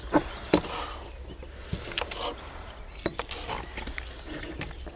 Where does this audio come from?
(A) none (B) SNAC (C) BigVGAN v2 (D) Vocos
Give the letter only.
A